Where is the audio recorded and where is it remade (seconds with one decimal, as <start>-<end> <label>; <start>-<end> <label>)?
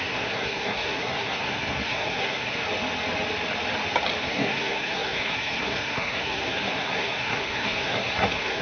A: 0.0-2.6 remade; 2.6-4.2 recorded; 4.2-8.6 remade